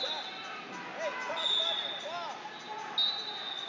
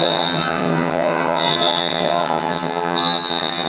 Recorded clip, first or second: first